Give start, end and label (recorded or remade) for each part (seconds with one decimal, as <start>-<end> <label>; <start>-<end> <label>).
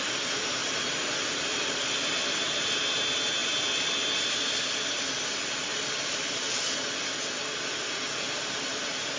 0.0-0.6 recorded; 0.6-1.8 remade; 1.8-3.4 recorded; 3.4-5.0 remade; 5.0-5.7 recorded; 5.7-6.5 remade; 6.5-9.2 recorded